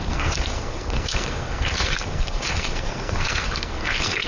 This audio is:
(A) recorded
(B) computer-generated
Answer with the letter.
B